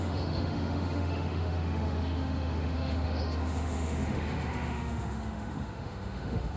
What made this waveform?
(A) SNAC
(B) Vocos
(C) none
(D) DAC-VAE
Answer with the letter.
D